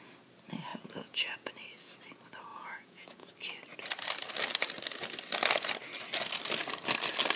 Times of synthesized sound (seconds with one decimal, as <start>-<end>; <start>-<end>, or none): 0.7-1.5; 2.5-3.3